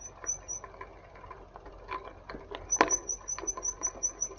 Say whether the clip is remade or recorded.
recorded